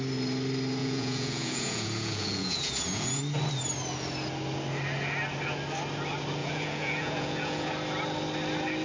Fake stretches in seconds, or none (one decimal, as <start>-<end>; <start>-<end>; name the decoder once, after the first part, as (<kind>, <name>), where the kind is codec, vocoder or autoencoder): 0.8-3.2 (vocoder, Vocos); 6.4-7.7